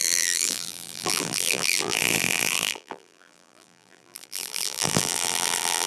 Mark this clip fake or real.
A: fake